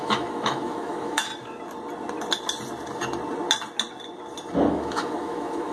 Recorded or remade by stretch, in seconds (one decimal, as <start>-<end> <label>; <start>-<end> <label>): 0.0-1.3 remade; 1.3-4.7 recorded; 4.7-5.7 remade